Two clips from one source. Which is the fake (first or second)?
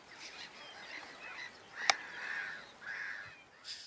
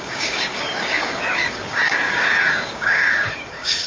second